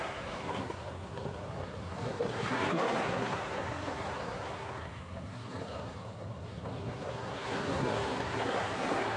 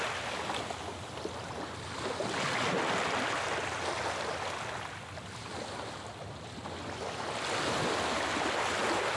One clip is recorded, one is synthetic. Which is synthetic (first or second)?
first